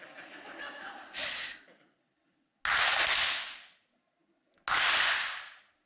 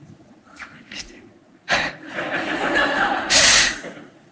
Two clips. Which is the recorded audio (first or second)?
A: first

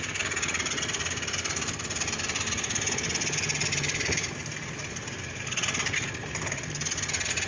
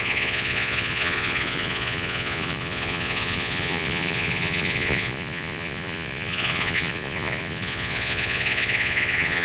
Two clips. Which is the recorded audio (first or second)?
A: first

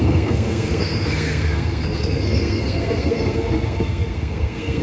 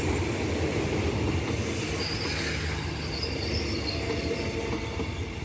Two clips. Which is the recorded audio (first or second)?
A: second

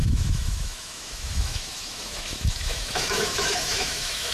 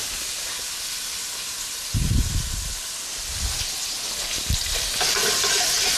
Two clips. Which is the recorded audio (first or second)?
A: second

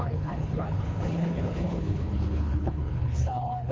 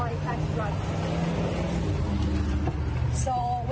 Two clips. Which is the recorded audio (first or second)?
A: second